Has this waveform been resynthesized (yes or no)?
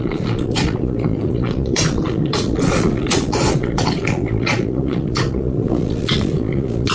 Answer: yes